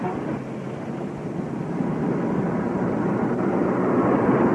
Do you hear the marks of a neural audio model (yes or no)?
yes